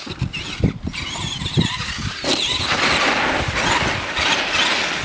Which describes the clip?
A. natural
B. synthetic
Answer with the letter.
A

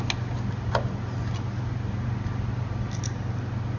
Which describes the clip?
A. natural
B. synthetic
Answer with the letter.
A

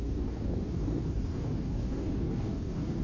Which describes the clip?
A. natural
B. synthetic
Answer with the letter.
B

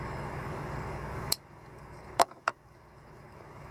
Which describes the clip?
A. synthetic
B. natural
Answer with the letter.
A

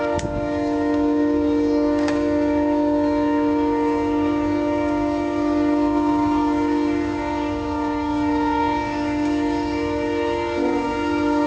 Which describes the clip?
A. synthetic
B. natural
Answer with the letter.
A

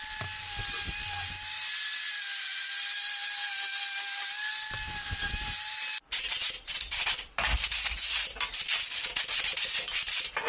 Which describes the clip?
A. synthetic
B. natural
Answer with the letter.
B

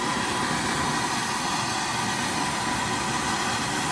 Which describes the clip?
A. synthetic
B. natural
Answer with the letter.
B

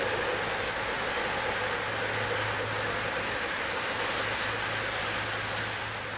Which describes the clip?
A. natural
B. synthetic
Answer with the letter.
A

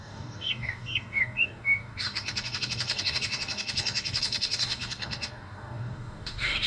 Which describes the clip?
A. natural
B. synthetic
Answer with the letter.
B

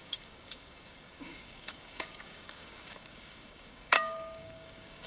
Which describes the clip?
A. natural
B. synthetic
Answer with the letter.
B